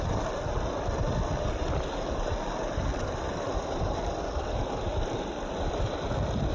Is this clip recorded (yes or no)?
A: no